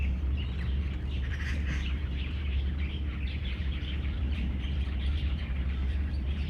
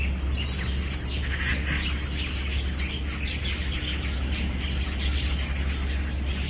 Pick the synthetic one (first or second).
first